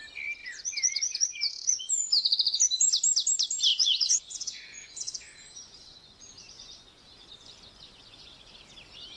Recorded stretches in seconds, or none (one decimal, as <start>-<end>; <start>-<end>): 0.0-0.4; 1.9-3.7; 8.5-9.2